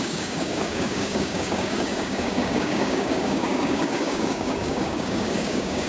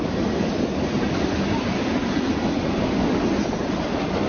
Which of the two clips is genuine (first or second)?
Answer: second